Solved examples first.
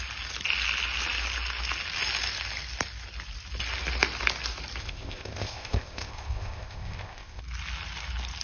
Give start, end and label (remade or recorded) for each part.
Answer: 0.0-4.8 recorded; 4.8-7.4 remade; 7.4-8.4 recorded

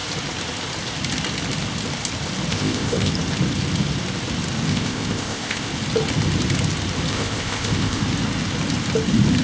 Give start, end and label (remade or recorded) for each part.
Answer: 0.0-2.5 recorded; 2.5-3.1 remade; 3.1-4.7 recorded; 4.7-5.7 remade; 5.7-7.1 recorded; 7.1-8.0 remade; 8.0-9.4 recorded

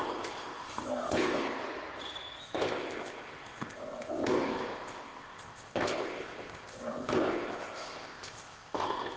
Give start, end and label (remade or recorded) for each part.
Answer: 0.0-1.6 remade; 1.6-2.4 recorded; 2.4-9.2 remade

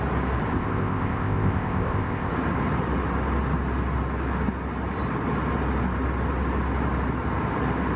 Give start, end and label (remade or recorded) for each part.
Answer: 0.0-0.5 recorded; 0.5-2.3 remade; 2.3-8.0 recorded

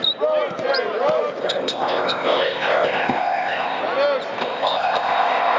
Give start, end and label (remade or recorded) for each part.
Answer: 0.0-1.4 recorded; 1.4-3.8 remade; 3.8-4.4 recorded; 4.4-5.6 remade